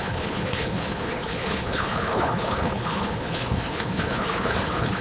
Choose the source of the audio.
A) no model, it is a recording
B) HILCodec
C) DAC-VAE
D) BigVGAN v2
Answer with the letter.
B